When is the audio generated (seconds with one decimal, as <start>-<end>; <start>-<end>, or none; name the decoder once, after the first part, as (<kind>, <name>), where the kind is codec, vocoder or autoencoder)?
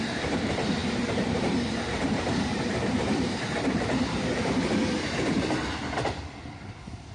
0.0-7.1 (vocoder, BigVGAN v2)